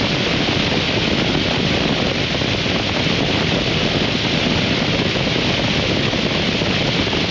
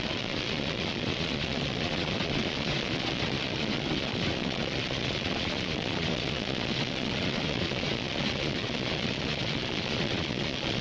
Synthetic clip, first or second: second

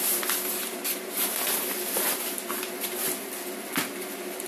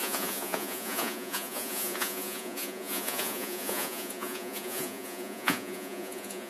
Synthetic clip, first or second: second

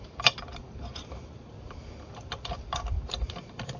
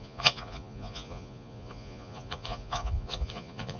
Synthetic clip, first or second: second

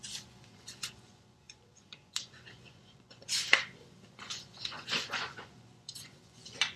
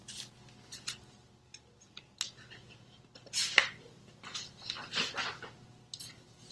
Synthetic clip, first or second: first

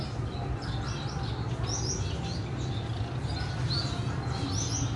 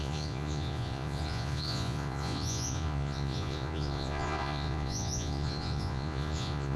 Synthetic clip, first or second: second